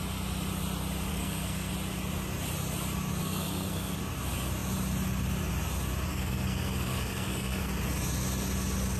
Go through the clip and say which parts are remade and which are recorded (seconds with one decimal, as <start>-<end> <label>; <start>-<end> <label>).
0.0-1.1 recorded; 1.1-1.7 remade; 1.7-3.2 recorded; 3.2-4.0 remade; 4.0-6.1 recorded; 6.1-7.7 remade; 7.7-9.0 recorded